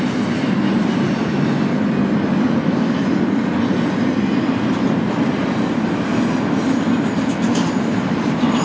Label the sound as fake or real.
real